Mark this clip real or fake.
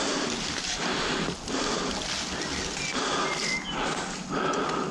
real